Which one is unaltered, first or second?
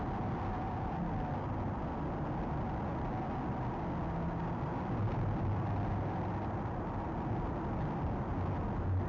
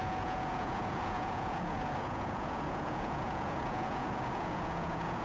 first